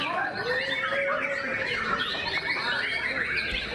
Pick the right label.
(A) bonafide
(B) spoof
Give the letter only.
A